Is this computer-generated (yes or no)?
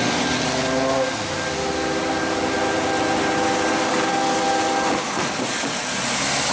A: no